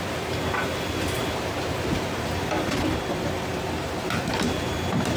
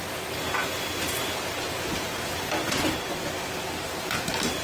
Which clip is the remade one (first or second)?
first